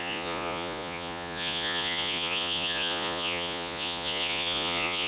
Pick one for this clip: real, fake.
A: fake